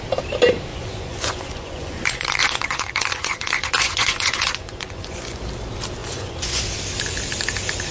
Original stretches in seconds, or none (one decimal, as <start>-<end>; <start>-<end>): 0.0-0.7; 5.4-6.0; 6.6-7.9